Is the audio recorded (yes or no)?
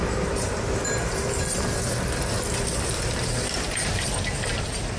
no